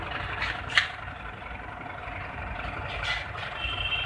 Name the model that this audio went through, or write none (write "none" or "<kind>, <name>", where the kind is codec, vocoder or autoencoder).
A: none